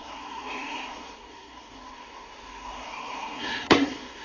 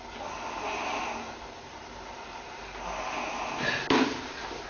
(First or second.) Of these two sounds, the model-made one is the first